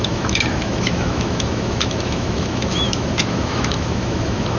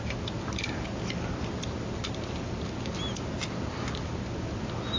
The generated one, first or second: first